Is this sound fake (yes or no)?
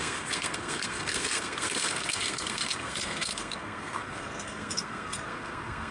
yes